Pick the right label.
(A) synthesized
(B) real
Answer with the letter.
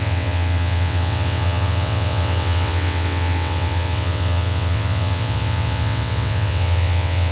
A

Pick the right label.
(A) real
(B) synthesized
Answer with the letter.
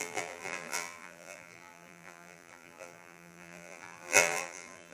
B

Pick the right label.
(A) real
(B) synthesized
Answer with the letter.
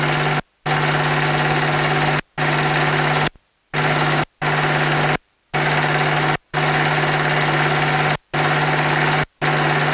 A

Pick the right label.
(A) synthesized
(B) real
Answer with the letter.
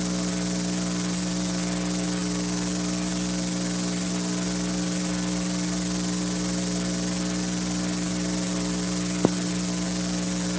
B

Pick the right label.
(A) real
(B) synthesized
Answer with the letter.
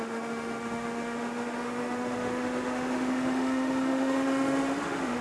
B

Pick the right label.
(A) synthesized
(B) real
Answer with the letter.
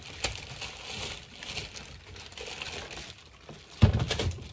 B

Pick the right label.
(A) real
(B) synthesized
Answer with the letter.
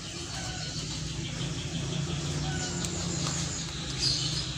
A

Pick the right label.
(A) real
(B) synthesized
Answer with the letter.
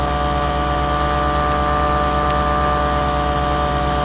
A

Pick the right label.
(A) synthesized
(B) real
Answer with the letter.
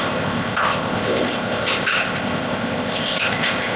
A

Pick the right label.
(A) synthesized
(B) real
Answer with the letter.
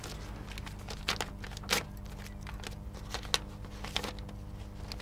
B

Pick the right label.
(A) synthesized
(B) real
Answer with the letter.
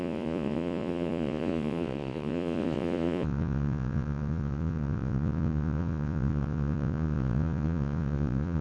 A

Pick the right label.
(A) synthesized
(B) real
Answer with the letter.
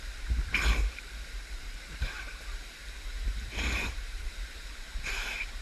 A